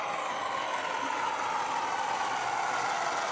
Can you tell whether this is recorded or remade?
recorded